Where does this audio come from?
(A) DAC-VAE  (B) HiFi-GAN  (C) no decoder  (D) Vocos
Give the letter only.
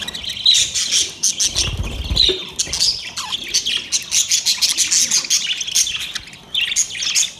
C